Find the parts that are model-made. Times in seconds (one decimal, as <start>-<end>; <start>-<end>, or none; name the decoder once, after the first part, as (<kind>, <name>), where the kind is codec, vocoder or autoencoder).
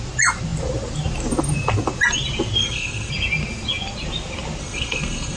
2.6-3.1 (codec, SNAC); 4.6-5.4